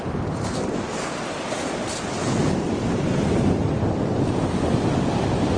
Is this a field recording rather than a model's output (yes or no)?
yes